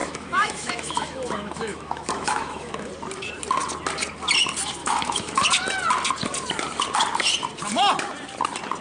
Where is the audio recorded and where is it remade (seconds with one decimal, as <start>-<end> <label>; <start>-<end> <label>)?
0.0-2.9 remade; 2.9-4.8 recorded; 4.8-5.4 remade; 5.4-8.8 recorded